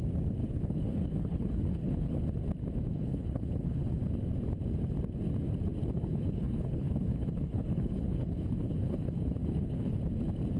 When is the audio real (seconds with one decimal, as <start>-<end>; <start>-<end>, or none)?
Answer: 0.0-0.4; 2.2-2.9; 4.0-5.8; 10.0-10.6